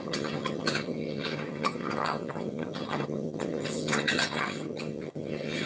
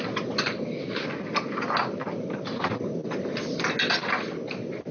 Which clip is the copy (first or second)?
first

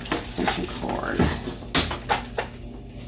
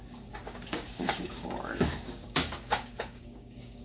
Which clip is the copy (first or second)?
second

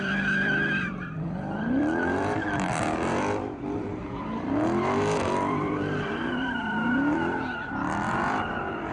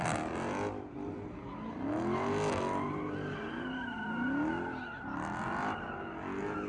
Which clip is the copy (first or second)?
first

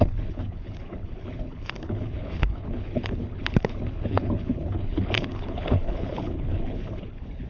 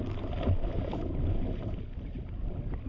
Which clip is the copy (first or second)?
first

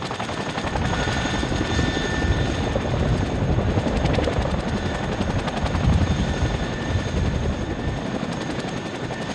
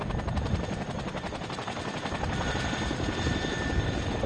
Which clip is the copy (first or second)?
second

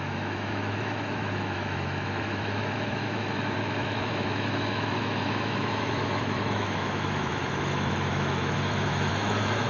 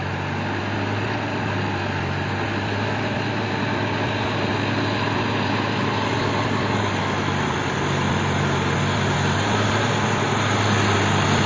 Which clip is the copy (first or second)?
first